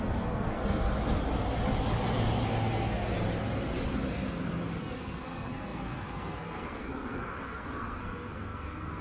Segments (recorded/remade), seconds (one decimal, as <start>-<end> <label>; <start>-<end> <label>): 0.0-0.6 remade; 0.6-4.8 recorded; 4.8-9.0 remade